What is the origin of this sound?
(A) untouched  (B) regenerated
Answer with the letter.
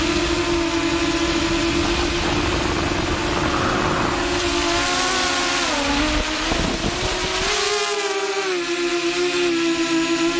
A